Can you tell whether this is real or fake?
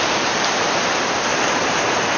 real